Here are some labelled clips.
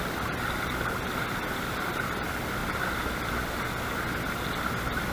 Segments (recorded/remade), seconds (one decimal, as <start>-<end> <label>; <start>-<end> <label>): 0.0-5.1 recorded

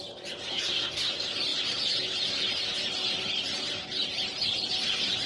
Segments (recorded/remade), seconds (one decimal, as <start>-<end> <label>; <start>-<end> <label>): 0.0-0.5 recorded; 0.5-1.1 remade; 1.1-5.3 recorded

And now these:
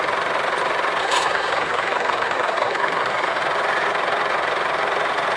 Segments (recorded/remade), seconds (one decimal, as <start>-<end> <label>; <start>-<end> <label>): 0.0-1.0 recorded; 1.0-3.4 remade; 3.4-5.4 recorded

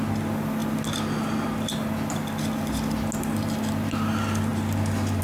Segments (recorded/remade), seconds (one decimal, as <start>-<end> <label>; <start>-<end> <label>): 0.0-5.2 recorded

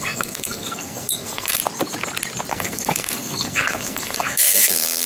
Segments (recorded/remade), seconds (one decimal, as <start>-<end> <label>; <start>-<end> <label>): 0.0-1.6 remade; 1.6-2.5 recorded; 2.5-5.1 remade

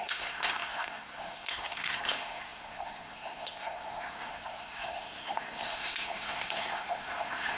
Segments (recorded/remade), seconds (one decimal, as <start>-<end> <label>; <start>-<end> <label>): 0.0-7.6 remade

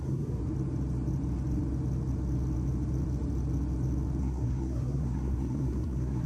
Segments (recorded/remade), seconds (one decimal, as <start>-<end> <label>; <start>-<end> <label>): 0.0-0.4 remade; 0.4-4.2 recorded; 4.2-6.3 remade

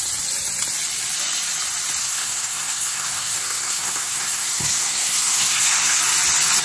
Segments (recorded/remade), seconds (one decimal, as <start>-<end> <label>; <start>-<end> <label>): 0.0-2.0 recorded; 2.0-6.0 remade; 6.0-6.6 recorded